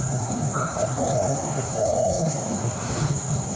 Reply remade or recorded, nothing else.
remade